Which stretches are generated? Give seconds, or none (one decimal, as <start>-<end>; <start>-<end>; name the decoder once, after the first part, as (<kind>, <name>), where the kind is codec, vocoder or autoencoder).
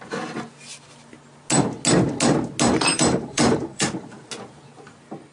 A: 2.9-4.2 (vocoder, BigVGAN v2)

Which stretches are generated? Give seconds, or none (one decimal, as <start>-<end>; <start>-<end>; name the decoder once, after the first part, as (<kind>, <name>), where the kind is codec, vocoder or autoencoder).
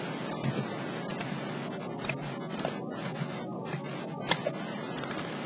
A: none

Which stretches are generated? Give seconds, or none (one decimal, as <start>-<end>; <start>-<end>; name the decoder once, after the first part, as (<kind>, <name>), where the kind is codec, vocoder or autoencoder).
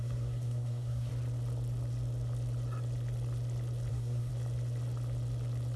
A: 0.0-1.1 (codec, SNAC); 3.9-4.3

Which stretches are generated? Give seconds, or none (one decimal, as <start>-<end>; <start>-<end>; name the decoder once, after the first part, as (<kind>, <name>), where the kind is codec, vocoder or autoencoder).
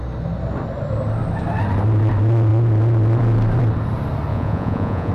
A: 4.3-5.1 (vocoder, Vocos)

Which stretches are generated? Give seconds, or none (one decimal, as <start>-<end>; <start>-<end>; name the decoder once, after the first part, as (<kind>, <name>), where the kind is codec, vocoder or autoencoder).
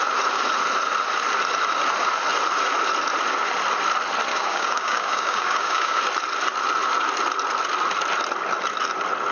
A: 4.3-6.0 (codec, DAC)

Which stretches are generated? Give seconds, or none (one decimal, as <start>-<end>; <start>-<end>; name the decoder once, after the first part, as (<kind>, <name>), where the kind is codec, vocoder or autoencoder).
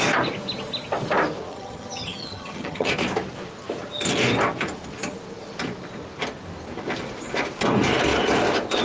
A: 1.5-2.9 (vocoder, HiFi-GAN)